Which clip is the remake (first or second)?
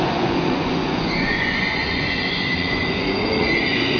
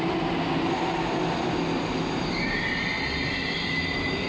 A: first